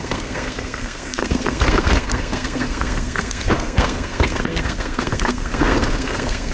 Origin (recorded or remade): remade